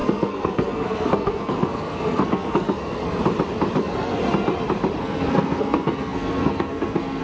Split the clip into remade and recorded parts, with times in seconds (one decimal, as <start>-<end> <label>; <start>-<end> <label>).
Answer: 0.0-3.2 remade; 3.2-3.8 recorded; 3.8-4.2 remade; 4.2-5.0 recorded; 5.0-7.2 remade